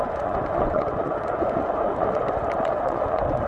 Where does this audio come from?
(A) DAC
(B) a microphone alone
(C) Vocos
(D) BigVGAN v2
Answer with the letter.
C